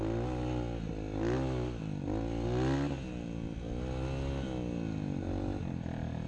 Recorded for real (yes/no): yes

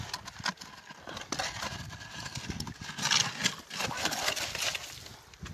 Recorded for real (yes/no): yes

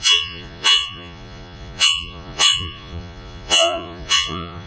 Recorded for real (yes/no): no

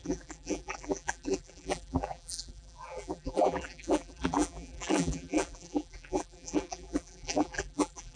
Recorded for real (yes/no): no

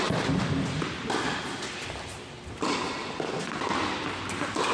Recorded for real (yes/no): yes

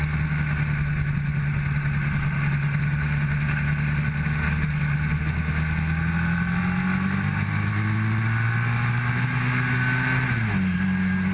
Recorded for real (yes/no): yes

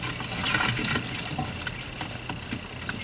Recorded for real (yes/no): yes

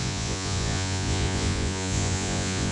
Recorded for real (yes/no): no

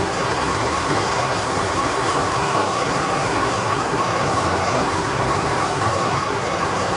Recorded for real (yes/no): no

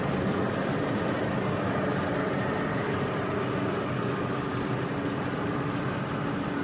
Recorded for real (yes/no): yes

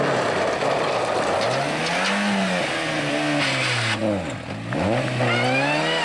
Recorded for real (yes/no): yes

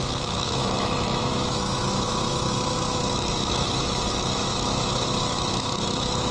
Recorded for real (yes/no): no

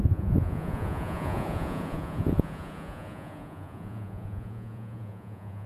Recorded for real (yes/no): no